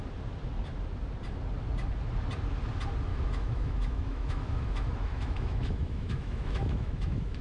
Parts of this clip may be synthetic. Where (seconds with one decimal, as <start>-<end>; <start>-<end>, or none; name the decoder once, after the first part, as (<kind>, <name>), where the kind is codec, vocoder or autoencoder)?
3.1-7.4 (autoencoder, DAC-VAE)